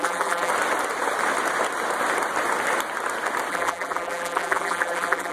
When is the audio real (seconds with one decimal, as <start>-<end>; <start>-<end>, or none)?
0.5-3.5